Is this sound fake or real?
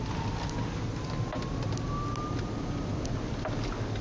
real